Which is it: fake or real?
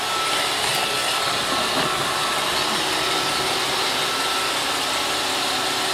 real